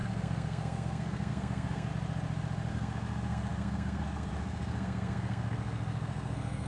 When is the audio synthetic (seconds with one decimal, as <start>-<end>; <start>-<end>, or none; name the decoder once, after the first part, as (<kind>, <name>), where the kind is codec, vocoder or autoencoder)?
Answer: 0.0-1.9 (codec, SNAC); 2.7-6.7